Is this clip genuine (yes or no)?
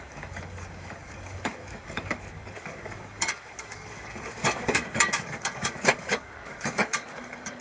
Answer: no